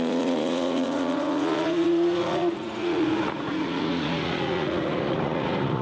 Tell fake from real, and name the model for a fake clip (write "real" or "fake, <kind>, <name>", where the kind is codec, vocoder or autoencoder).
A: fake, vocoder, Vocos